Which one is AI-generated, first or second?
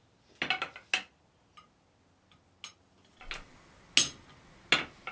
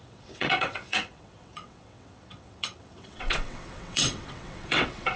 second